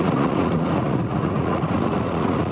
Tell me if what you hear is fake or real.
fake